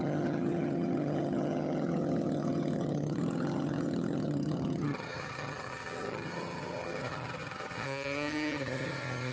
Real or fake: fake